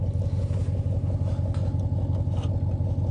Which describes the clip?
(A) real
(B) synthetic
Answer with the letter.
A